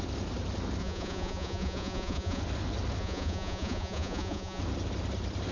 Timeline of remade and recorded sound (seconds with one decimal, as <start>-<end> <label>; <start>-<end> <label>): 0.0-0.8 recorded; 0.8-2.4 remade; 2.4-3.0 recorded; 3.0-4.6 remade; 4.6-5.5 recorded